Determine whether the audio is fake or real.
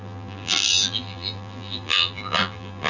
fake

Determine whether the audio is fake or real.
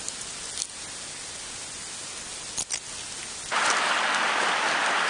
real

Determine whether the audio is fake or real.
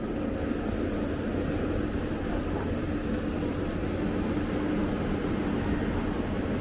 real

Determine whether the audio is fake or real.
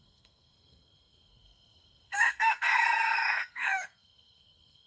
fake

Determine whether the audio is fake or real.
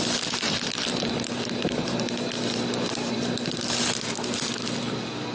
real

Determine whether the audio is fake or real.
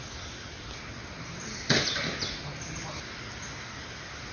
real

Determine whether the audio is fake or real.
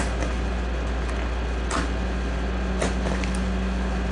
real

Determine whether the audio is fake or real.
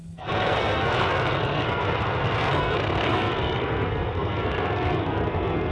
fake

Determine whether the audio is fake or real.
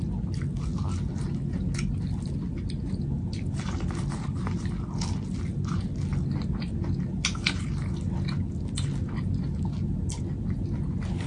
real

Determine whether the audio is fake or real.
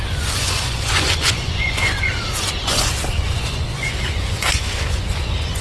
fake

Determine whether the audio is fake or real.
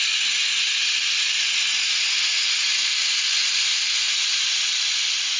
real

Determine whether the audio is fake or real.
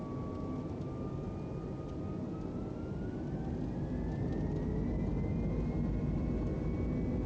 real